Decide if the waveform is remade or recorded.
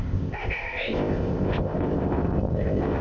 remade